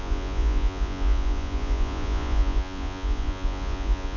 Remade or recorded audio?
remade